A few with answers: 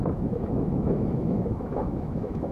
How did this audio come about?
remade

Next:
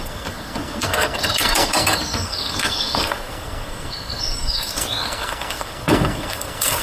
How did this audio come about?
remade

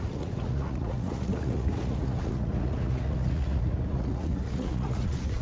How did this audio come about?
remade